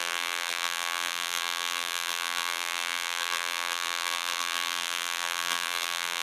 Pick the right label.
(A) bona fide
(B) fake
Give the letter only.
B